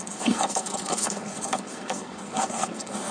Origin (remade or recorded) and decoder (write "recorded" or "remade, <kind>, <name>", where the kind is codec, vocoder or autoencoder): remade, codec, SNAC